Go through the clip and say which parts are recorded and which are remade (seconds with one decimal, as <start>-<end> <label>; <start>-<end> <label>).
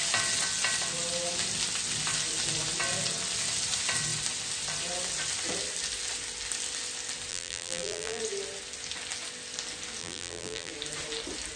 0.0-7.3 recorded; 7.3-8.2 remade; 8.2-10.0 recorded; 10.0-10.7 remade; 10.7-11.6 recorded